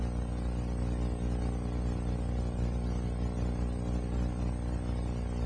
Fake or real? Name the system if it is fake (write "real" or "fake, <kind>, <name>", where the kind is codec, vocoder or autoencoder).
real